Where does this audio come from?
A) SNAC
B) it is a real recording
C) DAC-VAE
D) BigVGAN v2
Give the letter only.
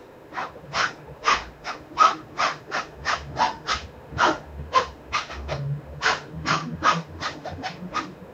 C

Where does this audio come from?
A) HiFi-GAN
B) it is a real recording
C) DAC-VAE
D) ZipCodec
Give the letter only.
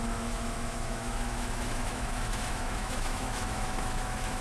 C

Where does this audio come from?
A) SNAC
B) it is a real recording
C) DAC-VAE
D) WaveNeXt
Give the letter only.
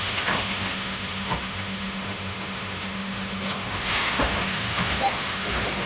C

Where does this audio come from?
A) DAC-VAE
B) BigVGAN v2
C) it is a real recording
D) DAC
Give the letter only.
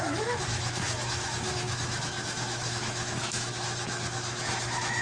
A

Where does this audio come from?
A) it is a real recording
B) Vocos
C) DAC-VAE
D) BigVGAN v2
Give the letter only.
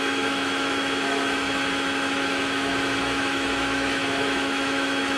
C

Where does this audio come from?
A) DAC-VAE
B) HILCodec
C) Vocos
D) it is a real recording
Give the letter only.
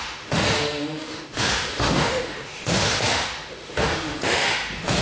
A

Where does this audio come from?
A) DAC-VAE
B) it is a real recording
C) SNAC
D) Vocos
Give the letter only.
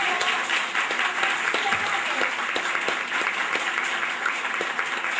B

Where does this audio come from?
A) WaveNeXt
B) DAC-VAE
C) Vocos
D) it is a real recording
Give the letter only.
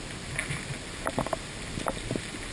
D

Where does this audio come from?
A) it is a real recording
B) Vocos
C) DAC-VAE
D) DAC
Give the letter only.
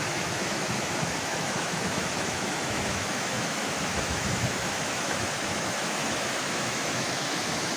C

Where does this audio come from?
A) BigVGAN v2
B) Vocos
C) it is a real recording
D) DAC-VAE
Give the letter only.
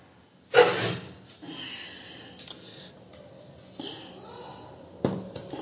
C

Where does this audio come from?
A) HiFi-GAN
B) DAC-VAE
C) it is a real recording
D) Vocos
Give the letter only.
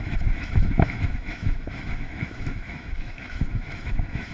B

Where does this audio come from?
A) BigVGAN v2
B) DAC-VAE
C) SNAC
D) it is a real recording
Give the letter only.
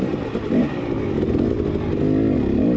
D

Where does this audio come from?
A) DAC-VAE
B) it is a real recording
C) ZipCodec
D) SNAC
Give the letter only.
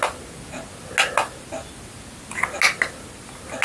B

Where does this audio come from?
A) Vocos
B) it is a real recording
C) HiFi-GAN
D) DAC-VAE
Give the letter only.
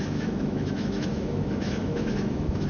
D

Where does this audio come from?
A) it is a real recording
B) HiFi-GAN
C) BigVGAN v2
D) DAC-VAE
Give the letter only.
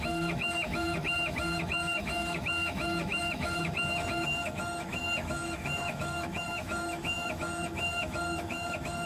D